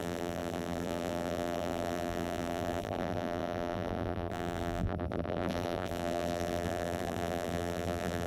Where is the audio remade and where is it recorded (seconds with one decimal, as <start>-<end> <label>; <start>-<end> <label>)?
0.0-8.3 remade